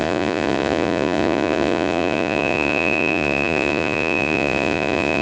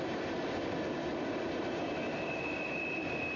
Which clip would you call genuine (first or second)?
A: second